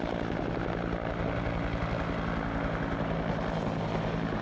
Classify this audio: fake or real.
real